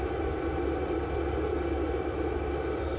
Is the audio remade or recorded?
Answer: recorded